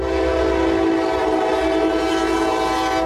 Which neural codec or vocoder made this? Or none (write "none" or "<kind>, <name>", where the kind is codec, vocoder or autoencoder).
none